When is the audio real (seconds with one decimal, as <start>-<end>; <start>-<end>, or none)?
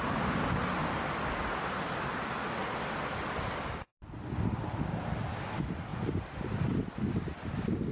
0.0-7.9